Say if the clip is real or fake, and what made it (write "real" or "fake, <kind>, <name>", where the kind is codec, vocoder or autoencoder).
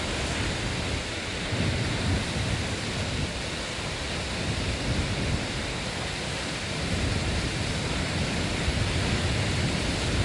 real